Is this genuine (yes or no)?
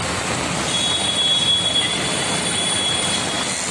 yes